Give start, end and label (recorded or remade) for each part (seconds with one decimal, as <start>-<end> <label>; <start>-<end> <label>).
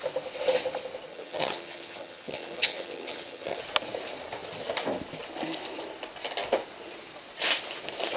0.0-1.1 recorded; 1.1-3.6 remade; 3.6-8.2 recorded